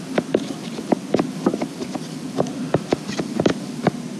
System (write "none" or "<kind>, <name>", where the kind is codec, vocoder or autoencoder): none